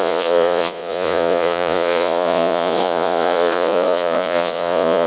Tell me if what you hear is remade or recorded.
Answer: remade